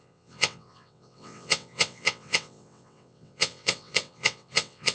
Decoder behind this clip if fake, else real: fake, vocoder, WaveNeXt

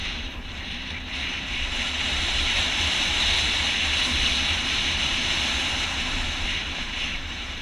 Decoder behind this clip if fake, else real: fake, vocoder, BigVGAN v2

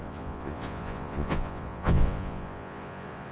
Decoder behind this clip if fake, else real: fake, vocoder, Vocos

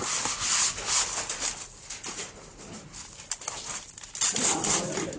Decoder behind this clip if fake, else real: real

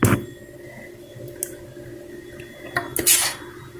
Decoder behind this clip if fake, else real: real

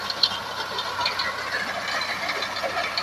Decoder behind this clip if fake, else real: real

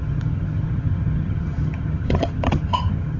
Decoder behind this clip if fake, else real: fake, vocoder, HiFi-GAN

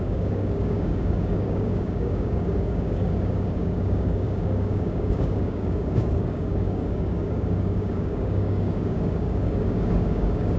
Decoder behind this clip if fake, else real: fake, codec, DAC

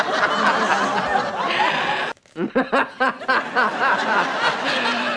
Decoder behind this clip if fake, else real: real